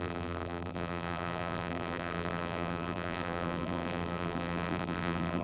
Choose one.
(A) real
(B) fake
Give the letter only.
B